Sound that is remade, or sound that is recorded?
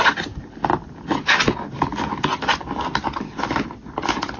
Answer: recorded